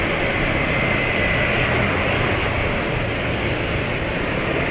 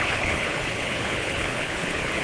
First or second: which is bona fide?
first